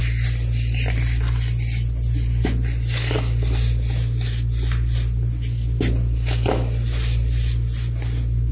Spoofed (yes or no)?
no